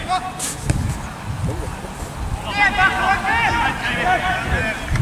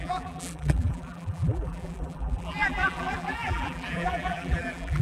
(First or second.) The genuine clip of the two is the first